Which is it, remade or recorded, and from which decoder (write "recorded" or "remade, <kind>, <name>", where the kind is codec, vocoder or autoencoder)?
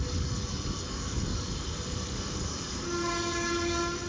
remade, codec, DAC